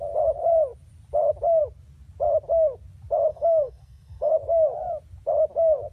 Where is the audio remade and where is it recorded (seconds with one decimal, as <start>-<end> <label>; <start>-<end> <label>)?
0.0-3.3 recorded; 3.3-4.3 remade; 4.3-5.9 recorded